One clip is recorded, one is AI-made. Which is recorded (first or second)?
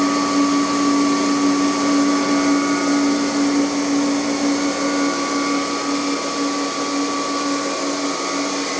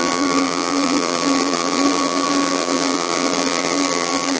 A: first